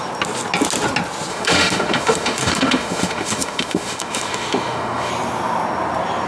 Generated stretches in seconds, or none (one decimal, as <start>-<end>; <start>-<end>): 1.3-5.1